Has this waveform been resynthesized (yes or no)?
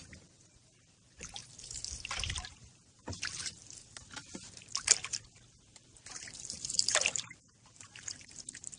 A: yes